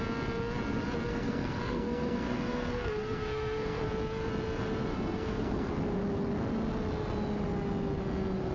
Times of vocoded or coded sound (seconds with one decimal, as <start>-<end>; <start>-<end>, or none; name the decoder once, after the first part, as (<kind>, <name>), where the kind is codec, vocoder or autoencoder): 1.1-3.9 (codec, SNAC); 4.9-5.7